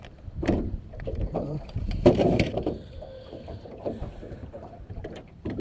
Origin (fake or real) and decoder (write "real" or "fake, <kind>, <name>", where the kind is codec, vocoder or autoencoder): fake, vocoder, BigVGAN v2